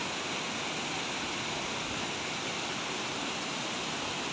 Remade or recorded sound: recorded